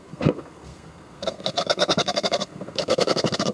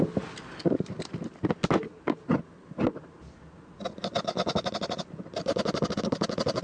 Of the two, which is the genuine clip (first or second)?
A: second